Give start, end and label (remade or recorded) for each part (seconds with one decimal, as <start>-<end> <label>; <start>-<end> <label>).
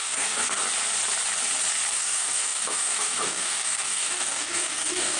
0.0-0.6 remade; 0.6-1.9 recorded; 1.9-5.2 remade